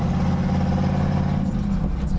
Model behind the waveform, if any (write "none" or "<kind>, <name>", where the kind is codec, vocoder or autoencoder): none